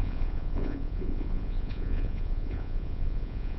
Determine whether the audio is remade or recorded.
remade